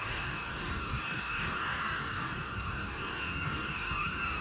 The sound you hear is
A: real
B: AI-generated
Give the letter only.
B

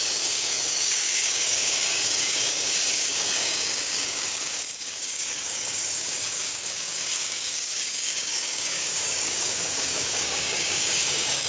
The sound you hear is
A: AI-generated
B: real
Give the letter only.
A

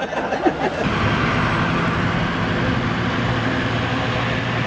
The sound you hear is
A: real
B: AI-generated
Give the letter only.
A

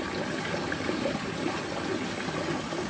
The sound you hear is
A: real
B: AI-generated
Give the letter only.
A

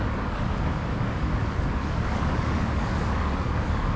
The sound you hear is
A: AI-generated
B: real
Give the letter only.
A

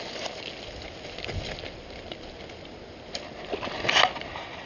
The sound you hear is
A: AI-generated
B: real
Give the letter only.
B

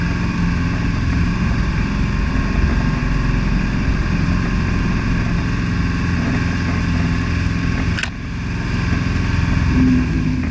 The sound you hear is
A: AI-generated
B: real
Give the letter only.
B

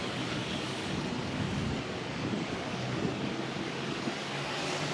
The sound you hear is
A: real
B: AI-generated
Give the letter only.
B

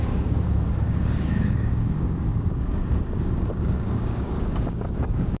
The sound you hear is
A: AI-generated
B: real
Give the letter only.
A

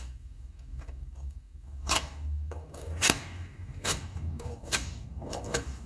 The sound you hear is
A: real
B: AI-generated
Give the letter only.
B